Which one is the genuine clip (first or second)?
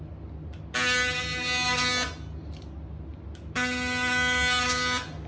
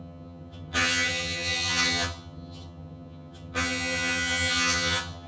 first